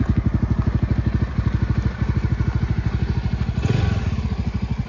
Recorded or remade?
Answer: recorded